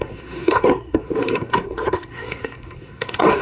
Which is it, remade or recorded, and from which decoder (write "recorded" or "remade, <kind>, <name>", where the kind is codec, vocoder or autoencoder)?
remade, codec, SNAC